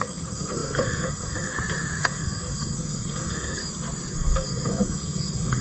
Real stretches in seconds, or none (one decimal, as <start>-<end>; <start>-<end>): 1.5-2.0; 3.6-4.1